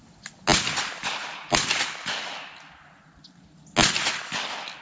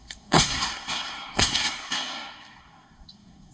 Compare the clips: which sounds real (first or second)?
first